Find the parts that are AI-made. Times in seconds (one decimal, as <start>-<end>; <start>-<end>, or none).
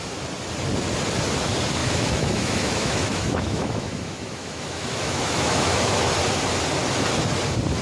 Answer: 1.8-6.1